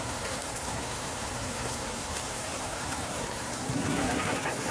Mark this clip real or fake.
fake